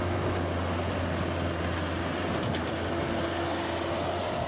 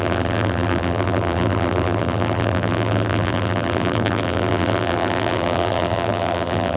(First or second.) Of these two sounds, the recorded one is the first